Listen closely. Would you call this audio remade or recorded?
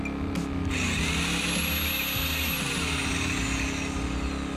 recorded